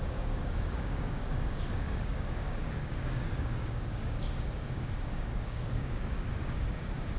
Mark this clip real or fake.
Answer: fake